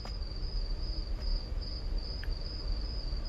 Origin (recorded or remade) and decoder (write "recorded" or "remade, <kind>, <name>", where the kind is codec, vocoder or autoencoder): recorded